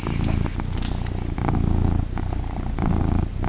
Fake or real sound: real